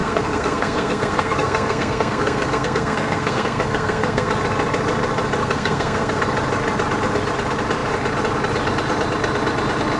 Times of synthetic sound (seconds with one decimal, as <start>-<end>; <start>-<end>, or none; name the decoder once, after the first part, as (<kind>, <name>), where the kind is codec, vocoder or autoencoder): 0.0-4.3 (codec, SNAC); 5.4-6.2